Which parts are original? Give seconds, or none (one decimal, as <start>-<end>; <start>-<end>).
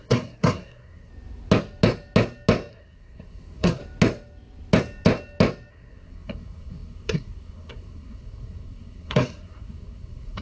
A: 1.1-2.7; 3.8-5.7